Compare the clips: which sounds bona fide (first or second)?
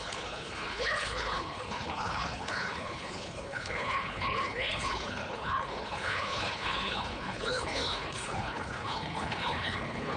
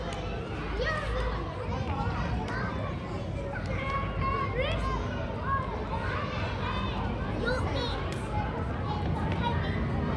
second